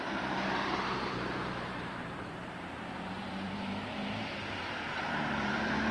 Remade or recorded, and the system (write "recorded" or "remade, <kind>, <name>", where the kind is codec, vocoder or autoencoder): remade, vocoder, BigVGAN v2